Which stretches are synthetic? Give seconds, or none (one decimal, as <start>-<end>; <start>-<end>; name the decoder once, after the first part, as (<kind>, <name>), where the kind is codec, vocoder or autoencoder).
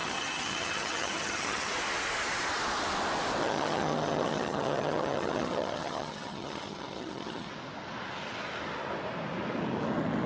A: 0.0-1.7 (vocoder, HiFi-GAN); 3.4-7.5